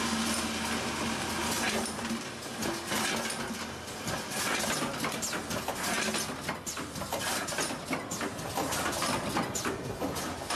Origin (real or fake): real